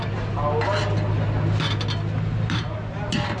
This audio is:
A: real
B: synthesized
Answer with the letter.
A